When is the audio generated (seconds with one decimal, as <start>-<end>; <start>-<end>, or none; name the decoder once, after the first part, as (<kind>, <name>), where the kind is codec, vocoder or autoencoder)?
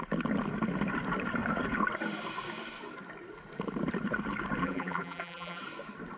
4.6-5.6 (vocoder, BigVGAN v2)